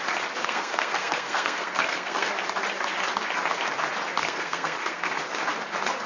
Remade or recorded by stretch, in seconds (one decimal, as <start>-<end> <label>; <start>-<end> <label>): 0.0-0.4 recorded; 0.4-2.3 remade; 2.3-4.2 recorded; 4.2-5.1 remade; 5.1-6.1 recorded